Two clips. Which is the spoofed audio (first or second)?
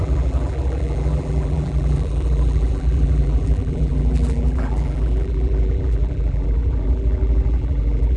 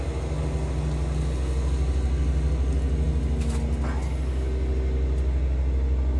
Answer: first